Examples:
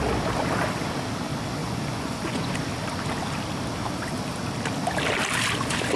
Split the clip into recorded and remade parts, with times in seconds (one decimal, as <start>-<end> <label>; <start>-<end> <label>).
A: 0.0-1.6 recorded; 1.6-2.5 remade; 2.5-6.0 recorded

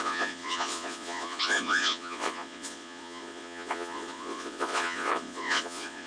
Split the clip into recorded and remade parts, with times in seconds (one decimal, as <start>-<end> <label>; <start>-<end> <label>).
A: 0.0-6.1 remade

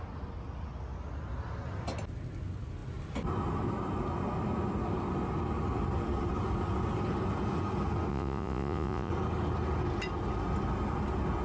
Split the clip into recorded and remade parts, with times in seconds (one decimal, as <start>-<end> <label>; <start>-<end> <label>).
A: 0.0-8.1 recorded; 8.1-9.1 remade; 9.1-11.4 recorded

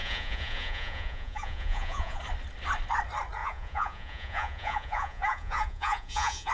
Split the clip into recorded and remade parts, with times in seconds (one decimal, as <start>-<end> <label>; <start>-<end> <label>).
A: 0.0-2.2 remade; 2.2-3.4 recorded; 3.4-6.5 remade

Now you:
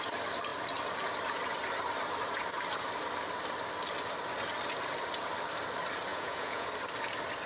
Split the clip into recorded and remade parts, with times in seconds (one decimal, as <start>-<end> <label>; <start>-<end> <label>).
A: 0.0-6.1 recorded; 6.1-6.7 remade; 6.7-7.5 recorded

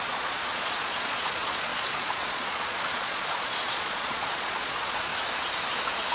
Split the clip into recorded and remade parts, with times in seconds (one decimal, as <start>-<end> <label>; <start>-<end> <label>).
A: 0.0-5.1 remade; 5.1-6.1 recorded

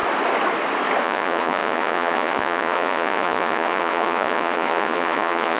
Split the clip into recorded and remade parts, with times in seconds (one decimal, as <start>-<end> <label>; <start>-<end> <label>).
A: 0.0-1.0 recorded; 1.0-5.6 remade